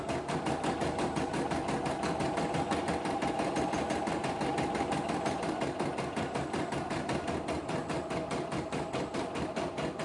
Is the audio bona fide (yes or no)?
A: yes